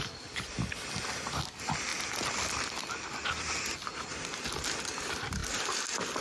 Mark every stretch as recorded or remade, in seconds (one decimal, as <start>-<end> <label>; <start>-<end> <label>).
0.0-6.2 recorded